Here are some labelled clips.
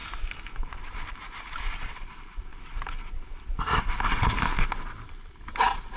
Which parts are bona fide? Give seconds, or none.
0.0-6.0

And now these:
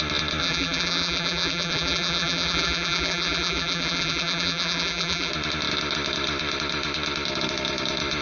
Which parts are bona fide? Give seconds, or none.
0.0-0.4; 5.3-8.2

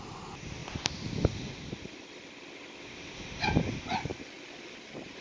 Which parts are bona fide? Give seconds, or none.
0.0-0.6; 1.5-1.9; 2.6-4.1